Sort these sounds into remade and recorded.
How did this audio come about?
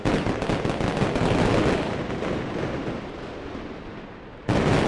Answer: recorded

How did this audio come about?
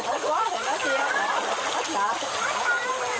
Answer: recorded